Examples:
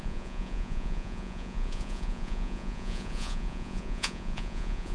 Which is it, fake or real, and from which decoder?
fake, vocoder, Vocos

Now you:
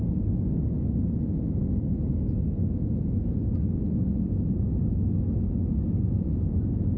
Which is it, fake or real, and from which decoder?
real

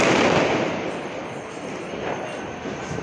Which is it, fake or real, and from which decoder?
real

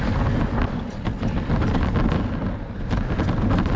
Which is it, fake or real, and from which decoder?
real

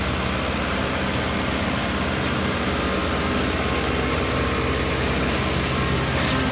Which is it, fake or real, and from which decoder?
real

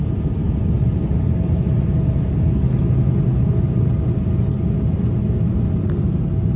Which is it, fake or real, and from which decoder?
real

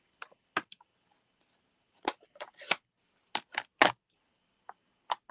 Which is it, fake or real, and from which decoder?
real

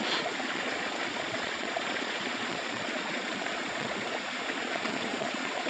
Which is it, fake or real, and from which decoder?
fake, vocoder, Vocos